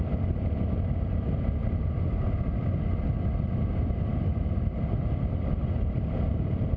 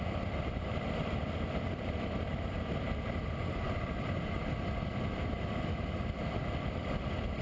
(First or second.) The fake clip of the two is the second